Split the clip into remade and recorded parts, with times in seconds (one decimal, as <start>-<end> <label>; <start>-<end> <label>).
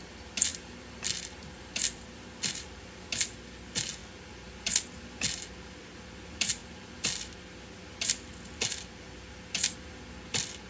0.0-0.5 recorded; 0.5-3.0 remade; 3.0-6.6 recorded; 6.6-7.4 remade; 7.4-10.7 recorded